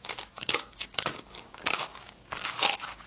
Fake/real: fake